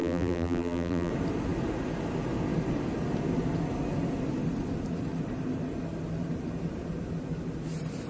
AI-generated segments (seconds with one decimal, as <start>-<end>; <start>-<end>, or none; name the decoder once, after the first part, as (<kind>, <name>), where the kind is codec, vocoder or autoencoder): 0.0-1.1 (vocoder, BigVGAN v2)